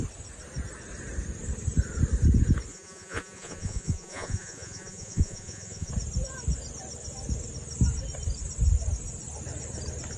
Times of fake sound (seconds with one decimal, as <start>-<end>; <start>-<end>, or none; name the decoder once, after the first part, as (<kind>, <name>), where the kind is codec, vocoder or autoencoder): 2.7-5.9 (vocoder, Vocos)